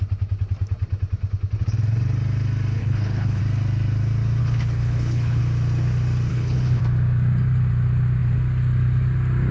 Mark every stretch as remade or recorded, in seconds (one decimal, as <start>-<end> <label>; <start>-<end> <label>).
0.0-2.8 recorded; 2.8-3.4 remade; 3.4-4.4 recorded; 4.4-5.4 remade; 5.4-6.3 recorded; 6.3-6.8 remade; 6.8-9.5 recorded